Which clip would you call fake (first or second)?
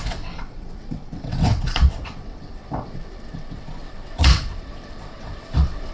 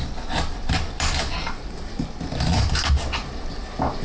first